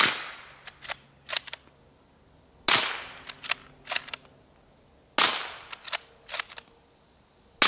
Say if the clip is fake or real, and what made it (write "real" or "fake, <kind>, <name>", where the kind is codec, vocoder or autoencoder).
real